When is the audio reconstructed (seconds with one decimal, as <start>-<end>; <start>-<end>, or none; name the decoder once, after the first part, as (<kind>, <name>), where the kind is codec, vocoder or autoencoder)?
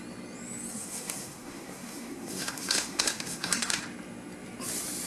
0.7-3.8 (codec, SNAC)